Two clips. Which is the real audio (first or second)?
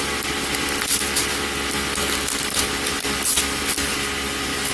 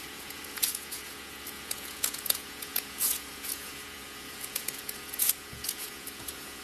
first